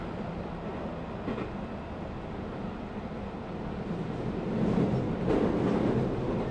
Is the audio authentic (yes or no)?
yes